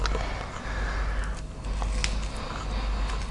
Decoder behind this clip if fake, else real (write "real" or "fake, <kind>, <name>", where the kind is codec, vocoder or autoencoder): real